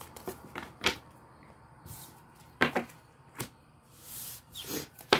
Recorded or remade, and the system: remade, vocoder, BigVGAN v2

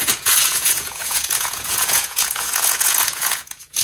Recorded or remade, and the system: remade, vocoder, Vocos